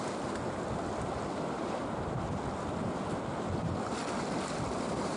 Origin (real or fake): real